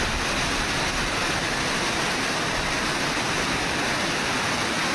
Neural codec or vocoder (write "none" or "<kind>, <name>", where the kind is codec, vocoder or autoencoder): none